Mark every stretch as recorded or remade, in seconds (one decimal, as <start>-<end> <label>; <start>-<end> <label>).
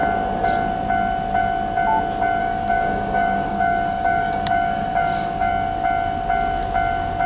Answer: 0.0-2.4 recorded; 2.4-5.5 remade; 5.5-7.3 recorded